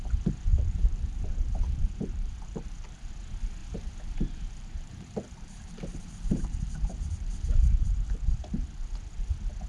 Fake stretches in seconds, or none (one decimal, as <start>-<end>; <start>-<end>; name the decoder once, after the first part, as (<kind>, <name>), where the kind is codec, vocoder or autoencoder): 0.5-3.1 (vocoder, BigVGAN v2); 3.6-8.3